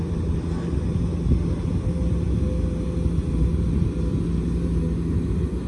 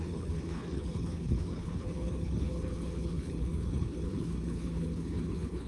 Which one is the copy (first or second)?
second